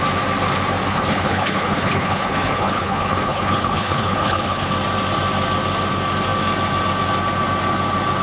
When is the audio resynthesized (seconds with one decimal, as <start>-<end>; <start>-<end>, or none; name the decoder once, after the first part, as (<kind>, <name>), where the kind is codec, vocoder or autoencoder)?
0.9-4.7 (codec, HILCodec)